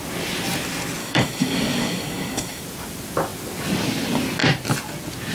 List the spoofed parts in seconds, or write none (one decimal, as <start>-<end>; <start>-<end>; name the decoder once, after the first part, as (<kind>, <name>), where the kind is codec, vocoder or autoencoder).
1.0-2.6 (codec, DAC)

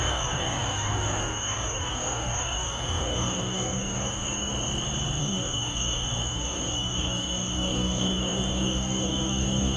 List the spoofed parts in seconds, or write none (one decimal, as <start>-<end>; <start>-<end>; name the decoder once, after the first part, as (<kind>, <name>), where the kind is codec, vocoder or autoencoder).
0.0-4.5 (codec, DAC); 5.2-9.8

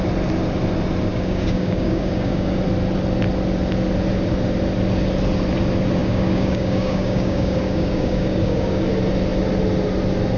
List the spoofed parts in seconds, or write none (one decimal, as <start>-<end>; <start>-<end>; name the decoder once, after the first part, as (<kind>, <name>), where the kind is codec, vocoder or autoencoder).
1.1-2.6 (codec, DAC); 6.0-8.8

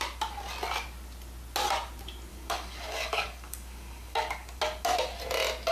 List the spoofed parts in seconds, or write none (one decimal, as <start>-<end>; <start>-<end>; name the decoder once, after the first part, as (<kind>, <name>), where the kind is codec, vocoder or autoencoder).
2.3-4.6 (codec, DAC)

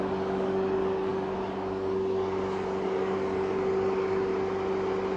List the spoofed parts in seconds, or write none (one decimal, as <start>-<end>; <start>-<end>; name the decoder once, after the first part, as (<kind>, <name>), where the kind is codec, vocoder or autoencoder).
0.0-4.3 (codec, DAC)

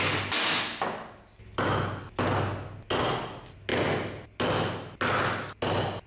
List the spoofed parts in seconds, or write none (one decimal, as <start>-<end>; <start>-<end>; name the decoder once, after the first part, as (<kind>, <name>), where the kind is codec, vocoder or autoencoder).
none

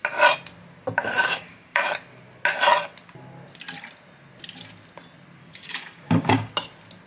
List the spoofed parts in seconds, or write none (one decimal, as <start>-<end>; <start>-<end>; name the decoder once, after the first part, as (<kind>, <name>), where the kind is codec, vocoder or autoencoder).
1.2-1.9 (codec, DAC); 5.4-6.5